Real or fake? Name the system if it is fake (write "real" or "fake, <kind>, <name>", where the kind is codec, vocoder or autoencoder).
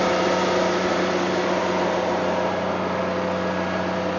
real